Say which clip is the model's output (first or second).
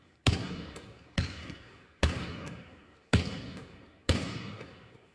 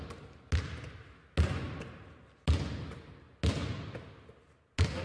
first